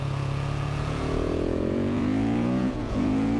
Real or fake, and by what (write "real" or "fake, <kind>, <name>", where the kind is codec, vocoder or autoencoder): fake, vocoder, Vocos